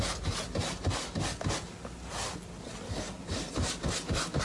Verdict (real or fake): real